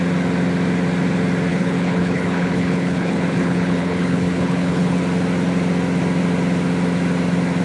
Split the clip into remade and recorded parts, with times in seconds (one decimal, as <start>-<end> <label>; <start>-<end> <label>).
0.0-1.5 recorded; 1.5-5.0 remade; 5.0-7.6 recorded